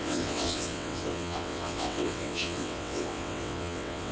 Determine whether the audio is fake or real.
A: fake